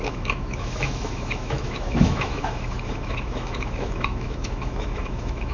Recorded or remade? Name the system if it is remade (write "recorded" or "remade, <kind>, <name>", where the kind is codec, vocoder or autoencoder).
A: remade, autoencoder, DAC-VAE